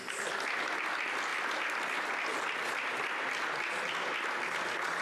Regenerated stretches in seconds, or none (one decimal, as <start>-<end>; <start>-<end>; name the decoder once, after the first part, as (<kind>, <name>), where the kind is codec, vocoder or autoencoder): none